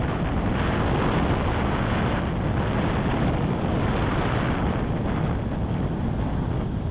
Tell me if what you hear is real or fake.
real